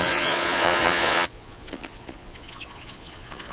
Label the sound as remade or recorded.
remade